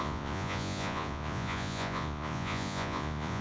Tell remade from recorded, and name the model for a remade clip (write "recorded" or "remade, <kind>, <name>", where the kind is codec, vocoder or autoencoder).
remade, vocoder, Vocos